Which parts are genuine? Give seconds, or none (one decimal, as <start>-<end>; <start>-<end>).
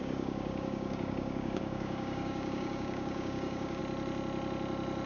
3.8-5.1